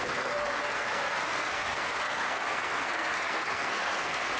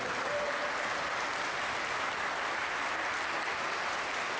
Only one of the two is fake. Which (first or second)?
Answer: first